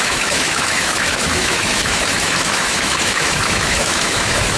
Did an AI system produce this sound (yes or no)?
yes